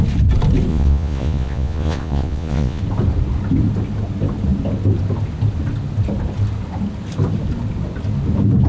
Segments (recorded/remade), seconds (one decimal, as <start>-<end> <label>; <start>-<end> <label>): 0.0-0.7 recorded; 0.7-2.8 remade; 2.8-8.7 recorded